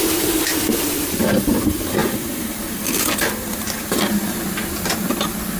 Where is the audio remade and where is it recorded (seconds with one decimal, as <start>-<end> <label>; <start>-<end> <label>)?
0.0-5.6 recorded

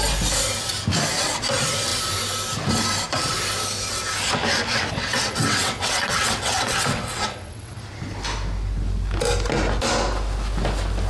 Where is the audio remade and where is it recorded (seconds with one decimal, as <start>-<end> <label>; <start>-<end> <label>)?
0.0-4.7 recorded; 4.7-7.8 remade; 7.8-11.1 recorded

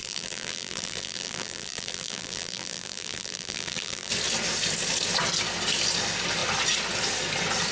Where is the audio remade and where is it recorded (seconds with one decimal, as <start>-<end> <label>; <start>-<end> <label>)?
0.0-4.1 remade; 4.1-7.7 recorded

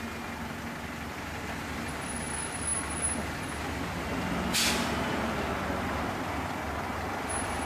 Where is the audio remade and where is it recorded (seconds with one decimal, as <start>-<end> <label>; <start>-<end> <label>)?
0.0-7.7 recorded

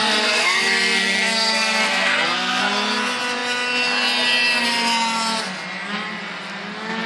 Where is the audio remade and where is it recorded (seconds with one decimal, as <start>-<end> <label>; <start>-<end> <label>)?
0.0-2.6 remade; 2.6-7.1 recorded

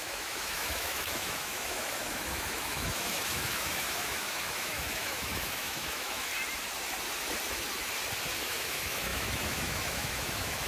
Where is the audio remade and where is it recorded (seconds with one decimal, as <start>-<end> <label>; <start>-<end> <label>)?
0.0-6.3 remade; 6.3-8.4 recorded; 8.4-10.7 remade